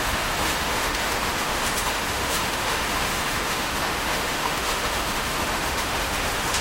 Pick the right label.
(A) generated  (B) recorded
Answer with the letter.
A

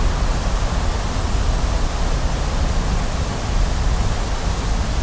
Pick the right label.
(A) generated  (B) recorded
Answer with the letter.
B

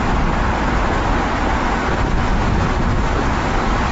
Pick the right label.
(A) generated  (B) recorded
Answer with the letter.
B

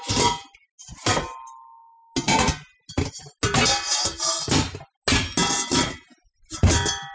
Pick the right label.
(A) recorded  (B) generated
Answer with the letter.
A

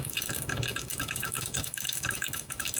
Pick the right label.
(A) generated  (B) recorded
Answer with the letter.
A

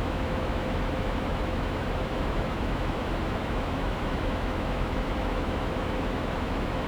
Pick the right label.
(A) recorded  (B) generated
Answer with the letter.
B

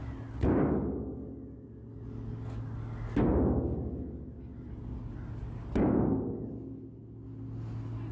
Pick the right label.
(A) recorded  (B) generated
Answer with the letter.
A